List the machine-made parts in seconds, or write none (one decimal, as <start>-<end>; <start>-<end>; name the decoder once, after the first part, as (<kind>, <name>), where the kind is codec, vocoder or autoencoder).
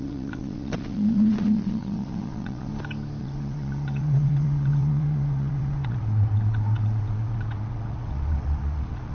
0.0-2.7 (vocoder, WaveNeXt); 3.2-9.1